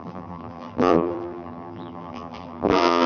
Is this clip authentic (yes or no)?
no